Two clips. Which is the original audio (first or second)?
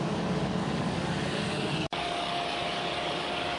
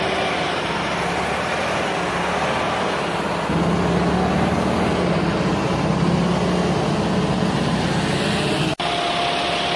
second